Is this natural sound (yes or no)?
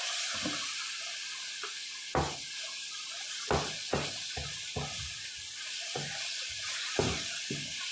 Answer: yes